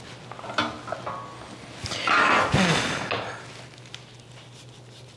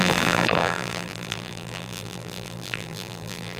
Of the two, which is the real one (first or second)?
first